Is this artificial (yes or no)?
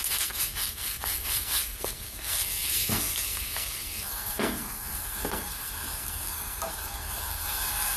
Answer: yes